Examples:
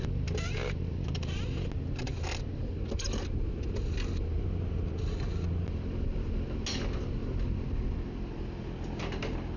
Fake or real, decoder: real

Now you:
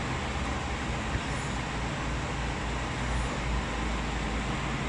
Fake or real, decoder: real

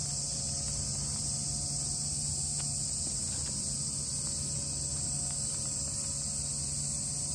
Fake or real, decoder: real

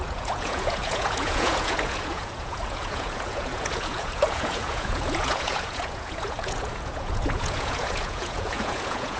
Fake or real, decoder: fake, vocoder, Vocos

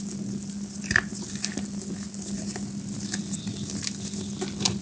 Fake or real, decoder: real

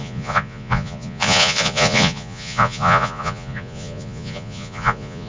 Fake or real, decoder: fake, vocoder, Vocos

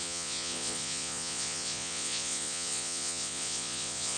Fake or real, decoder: fake, vocoder, Vocos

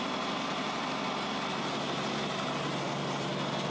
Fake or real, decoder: real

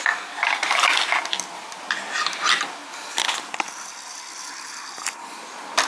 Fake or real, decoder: real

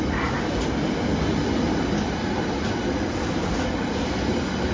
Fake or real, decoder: real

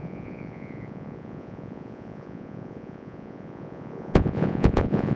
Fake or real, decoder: fake, vocoder, Vocos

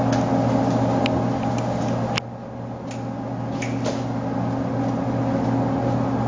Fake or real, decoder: real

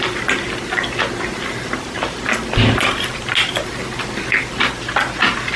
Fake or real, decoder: real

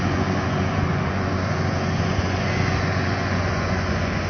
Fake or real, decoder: fake, vocoder, Vocos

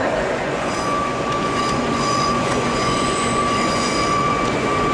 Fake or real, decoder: fake, vocoder, Vocos